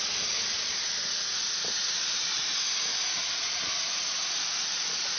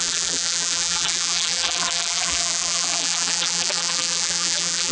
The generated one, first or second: second